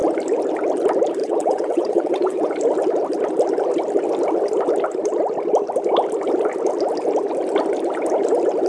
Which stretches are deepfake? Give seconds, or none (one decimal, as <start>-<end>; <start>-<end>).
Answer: 1.2-2.5